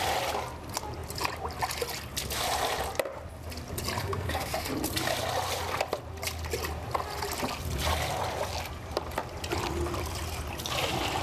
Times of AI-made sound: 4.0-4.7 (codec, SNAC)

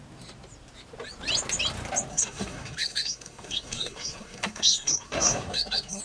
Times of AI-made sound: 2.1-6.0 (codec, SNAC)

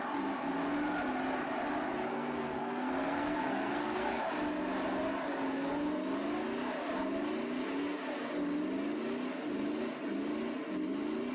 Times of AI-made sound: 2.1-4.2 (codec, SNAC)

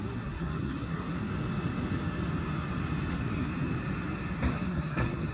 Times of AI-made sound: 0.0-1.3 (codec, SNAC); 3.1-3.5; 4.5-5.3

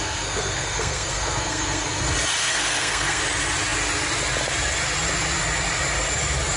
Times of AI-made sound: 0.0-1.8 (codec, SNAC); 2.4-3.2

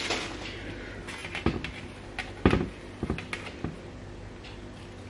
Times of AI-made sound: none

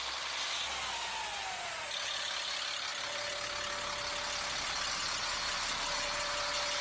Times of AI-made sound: none